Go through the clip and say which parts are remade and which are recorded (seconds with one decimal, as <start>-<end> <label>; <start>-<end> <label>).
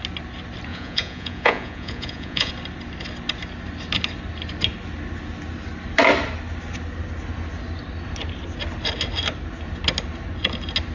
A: 0.0-0.7 recorded; 0.7-2.5 remade; 2.5-10.9 recorded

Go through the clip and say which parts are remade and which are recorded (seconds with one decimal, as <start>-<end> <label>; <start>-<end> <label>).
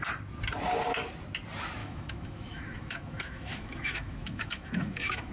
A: 0.0-1.8 recorded; 1.8-5.3 remade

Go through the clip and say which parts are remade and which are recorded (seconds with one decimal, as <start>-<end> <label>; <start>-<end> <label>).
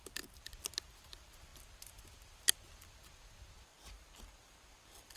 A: 0.0-5.2 recorded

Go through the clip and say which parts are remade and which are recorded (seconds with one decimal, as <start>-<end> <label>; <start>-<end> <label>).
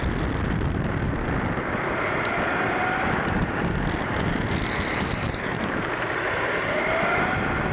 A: 0.0-4.9 recorded; 4.9-5.9 remade; 5.9-7.7 recorded